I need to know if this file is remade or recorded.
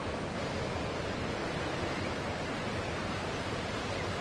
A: recorded